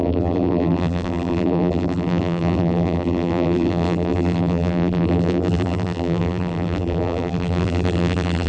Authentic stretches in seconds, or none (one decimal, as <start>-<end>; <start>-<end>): none